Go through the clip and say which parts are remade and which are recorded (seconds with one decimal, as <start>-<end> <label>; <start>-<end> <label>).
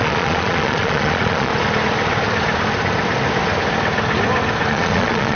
0.0-1.5 remade; 1.5-4.7 recorded; 4.7-5.4 remade